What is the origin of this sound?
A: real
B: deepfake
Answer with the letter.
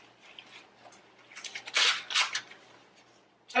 A